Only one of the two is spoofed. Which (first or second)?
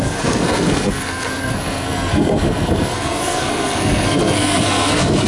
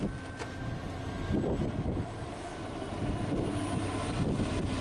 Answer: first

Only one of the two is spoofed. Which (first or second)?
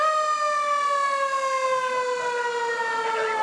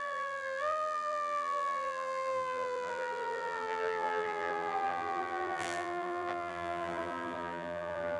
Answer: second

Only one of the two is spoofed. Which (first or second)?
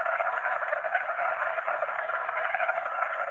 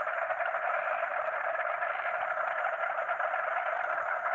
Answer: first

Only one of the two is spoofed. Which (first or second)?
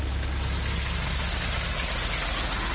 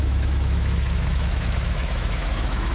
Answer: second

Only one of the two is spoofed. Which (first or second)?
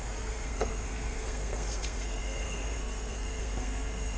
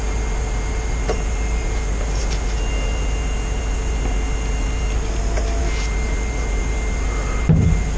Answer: first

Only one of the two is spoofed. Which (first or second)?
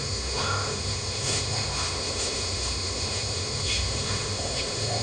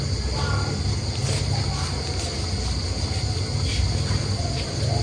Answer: first